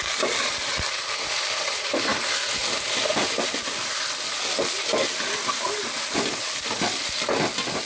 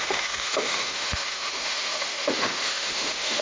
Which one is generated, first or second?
second